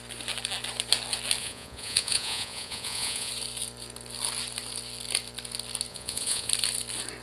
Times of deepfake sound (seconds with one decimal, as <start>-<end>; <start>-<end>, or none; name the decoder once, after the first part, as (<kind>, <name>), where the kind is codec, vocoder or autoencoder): 1.4-3.3 (vocoder, Vocos); 5.9-6.5